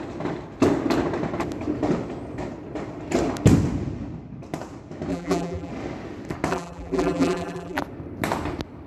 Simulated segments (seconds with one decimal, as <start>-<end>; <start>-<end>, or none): 5.1-5.7; 6.5-7.8